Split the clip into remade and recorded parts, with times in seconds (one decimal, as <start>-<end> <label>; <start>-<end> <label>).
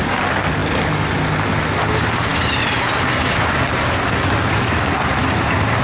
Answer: 0.0-5.8 recorded